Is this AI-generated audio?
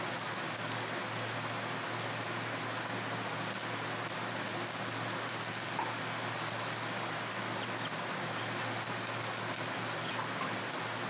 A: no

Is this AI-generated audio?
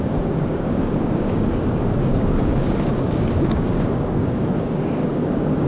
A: yes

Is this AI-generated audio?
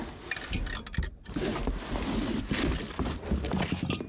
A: no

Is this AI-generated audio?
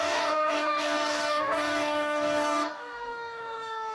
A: yes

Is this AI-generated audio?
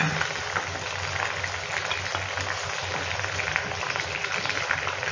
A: no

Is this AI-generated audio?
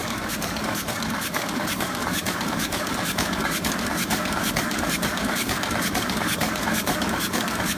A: yes